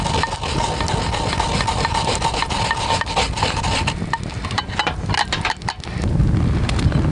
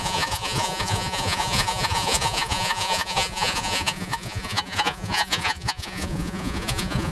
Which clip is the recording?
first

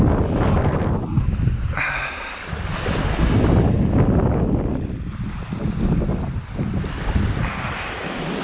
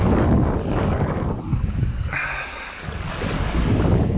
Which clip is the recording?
first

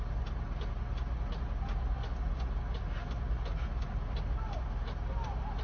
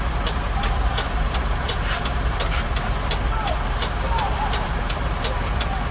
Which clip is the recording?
first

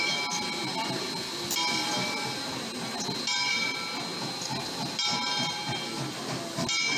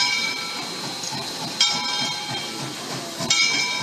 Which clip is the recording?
first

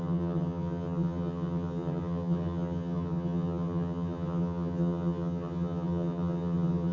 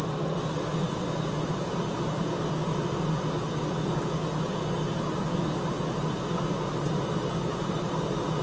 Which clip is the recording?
second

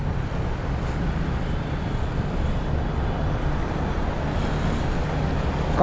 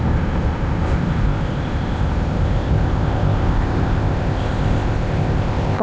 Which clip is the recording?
first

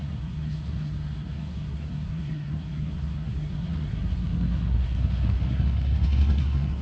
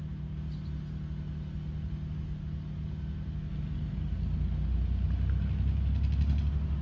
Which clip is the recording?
second